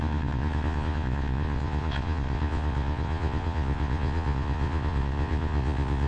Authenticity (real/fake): fake